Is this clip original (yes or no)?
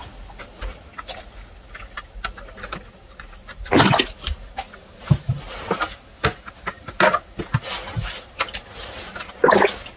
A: yes